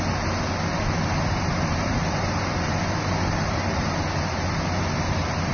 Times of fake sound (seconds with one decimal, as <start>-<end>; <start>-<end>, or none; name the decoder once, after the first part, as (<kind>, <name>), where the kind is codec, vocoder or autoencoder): 0.7-4.0 (vocoder, BigVGAN v2)